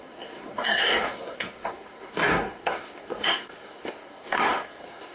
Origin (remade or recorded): remade